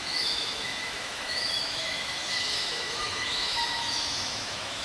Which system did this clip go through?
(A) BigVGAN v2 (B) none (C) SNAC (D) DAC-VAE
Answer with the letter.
D